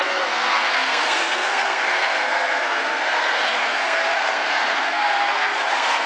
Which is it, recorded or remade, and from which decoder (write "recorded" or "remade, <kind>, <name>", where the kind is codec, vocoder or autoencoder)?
remade, codec, SNAC